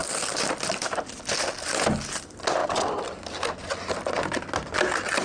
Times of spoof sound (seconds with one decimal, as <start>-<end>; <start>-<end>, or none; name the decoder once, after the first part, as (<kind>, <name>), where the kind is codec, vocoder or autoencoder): none